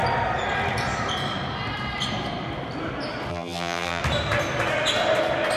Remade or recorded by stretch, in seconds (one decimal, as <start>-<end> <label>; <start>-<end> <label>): 0.0-3.3 recorded; 3.3-4.0 remade; 4.0-5.6 recorded